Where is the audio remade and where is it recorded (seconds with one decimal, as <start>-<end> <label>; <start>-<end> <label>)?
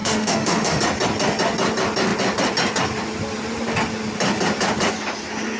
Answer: 0.0-0.8 remade; 0.8-5.6 recorded